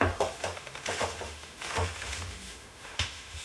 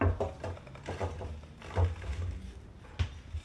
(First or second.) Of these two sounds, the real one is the second